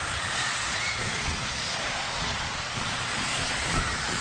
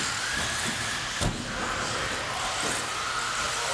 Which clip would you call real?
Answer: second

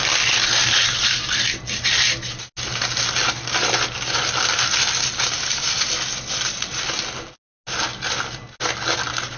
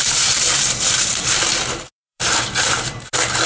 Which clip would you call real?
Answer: first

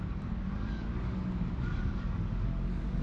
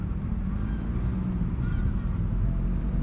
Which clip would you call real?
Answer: second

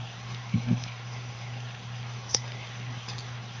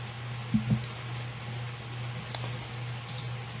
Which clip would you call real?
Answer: second